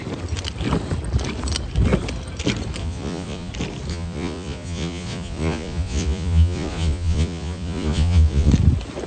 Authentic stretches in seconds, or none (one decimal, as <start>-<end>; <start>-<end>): 0.0-2.8; 3.5-3.9; 8.5-9.1